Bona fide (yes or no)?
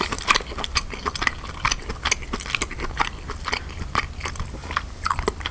yes